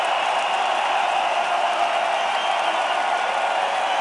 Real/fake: real